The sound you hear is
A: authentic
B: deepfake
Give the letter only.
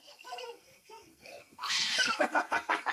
B